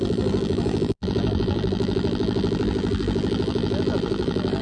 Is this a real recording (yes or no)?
no